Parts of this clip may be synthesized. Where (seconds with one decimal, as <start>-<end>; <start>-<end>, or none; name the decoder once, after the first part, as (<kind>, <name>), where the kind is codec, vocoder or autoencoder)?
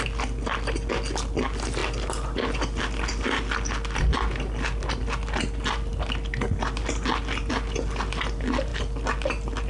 none